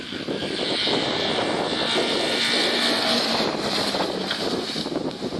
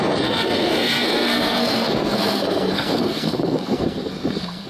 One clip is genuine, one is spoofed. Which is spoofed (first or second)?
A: second